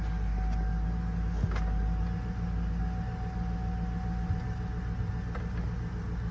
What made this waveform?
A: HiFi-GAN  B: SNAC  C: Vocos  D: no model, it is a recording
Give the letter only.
D